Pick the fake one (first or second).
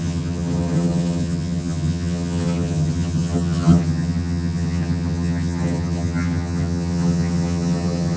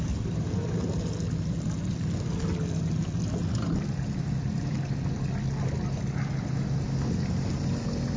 first